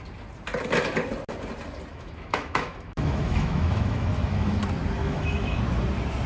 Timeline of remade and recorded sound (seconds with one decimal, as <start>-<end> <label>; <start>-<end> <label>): 0.0-1.9 recorded; 1.9-4.6 remade; 4.6-5.0 recorded; 5.0-5.6 remade; 5.6-6.3 recorded